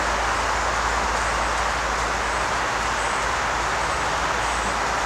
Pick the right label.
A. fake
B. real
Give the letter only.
B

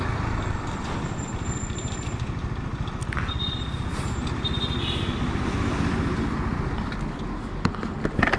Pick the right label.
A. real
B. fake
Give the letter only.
A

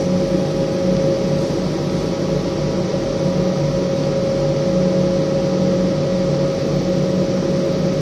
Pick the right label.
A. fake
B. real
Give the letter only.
B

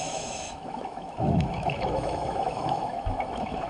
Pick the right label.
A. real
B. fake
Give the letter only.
B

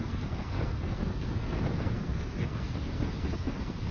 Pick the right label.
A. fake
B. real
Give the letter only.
A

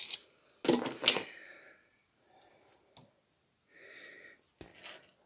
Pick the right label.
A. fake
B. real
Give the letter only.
B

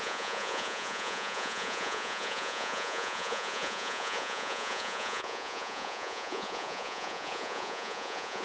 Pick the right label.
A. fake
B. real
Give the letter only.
A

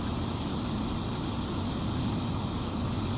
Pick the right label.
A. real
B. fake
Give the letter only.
A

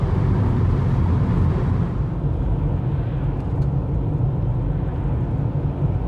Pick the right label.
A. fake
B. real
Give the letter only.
B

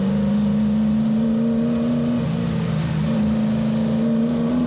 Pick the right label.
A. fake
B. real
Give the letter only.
B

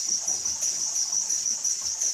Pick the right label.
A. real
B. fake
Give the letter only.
A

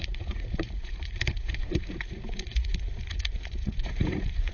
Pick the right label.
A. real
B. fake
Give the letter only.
B